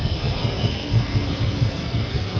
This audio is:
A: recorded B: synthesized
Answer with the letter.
B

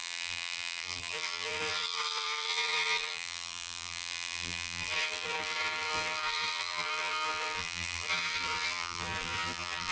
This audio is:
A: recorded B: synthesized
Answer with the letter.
B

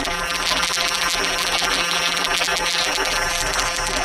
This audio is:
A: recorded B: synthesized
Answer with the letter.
B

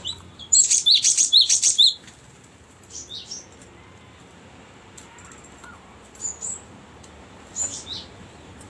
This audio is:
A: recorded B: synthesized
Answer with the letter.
B